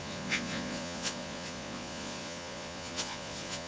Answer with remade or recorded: remade